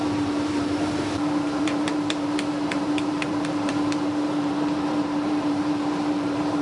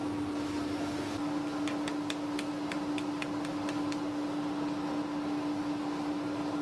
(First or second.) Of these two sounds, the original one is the second